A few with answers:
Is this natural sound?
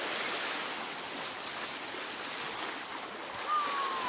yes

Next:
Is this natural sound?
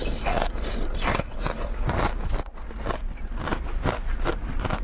yes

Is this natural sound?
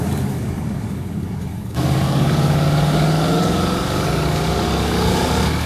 no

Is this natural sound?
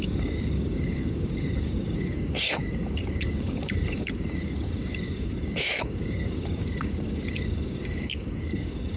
no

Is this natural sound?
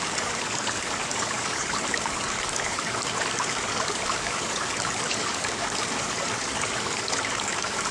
no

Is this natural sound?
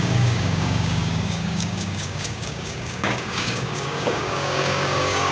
no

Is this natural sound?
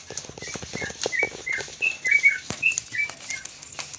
yes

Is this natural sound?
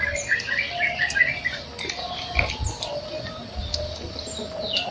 yes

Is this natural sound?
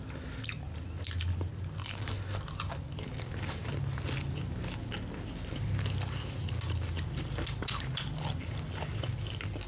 yes